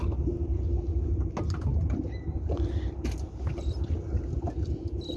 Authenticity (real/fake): real